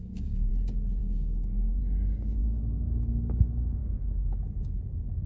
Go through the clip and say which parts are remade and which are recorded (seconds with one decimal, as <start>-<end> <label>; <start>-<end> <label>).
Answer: 0.0-0.5 remade; 0.5-1.0 recorded; 1.0-1.8 remade; 1.8-2.4 recorded; 2.4-3.8 remade; 3.8-5.3 recorded